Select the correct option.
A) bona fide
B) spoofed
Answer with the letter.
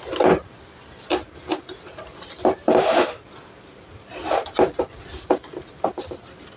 A